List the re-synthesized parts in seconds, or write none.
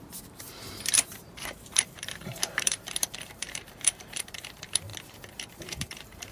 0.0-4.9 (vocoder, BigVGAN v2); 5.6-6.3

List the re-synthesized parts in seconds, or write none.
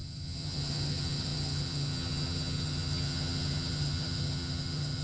0.0-5.0 (vocoder, HiFi-GAN)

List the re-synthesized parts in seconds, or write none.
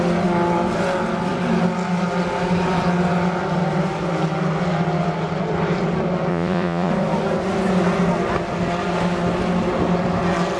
6.3-6.9 (vocoder, Vocos)